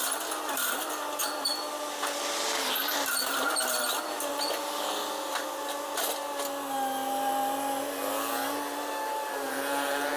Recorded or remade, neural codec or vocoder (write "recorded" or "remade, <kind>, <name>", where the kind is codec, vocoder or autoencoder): recorded